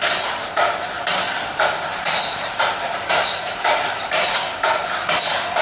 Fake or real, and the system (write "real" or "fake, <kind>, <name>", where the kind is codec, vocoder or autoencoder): fake, vocoder, BigVGAN v2